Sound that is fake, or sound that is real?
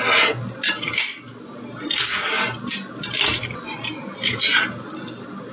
real